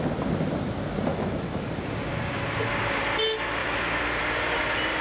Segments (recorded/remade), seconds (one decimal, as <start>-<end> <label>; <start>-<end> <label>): 0.0-1.1 recorded; 1.1-1.7 remade; 1.7-3.6 recorded; 3.6-4.2 remade; 4.2-5.0 recorded

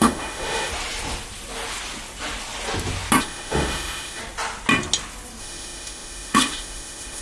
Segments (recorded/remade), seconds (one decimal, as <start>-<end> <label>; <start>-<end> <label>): 0.0-0.7 remade; 0.7-3.2 recorded; 3.2-4.2 remade; 4.2-5.4 recorded; 5.4-7.2 remade

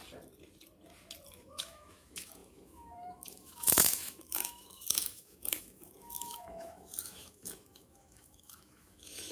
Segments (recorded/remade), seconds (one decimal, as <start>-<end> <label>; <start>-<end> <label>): 0.0-1.3 recorded; 1.3-9.3 remade

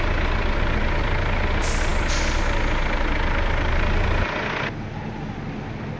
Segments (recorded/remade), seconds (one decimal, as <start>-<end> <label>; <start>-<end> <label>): 0.0-6.0 recorded

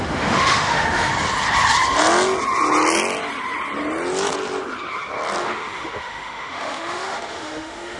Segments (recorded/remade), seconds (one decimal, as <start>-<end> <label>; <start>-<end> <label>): 0.0-1.1 remade; 1.1-5.4 recorded; 5.4-8.0 remade

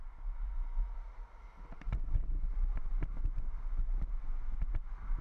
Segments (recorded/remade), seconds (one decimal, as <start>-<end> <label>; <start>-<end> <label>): 0.0-5.2 recorded

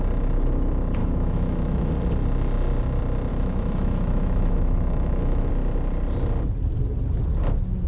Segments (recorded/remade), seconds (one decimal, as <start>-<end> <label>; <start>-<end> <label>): 0.0-1.0 recorded; 1.0-1.9 remade; 1.9-3.3 recorded; 3.3-5.5 remade; 5.5-7.9 recorded